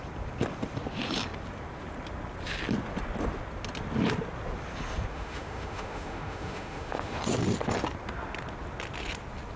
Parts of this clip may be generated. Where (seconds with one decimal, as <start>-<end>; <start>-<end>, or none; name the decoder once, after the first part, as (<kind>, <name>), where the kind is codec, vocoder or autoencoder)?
5.1-7.2 (autoencoder, DAC-VAE)